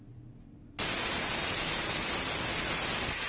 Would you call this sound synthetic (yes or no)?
no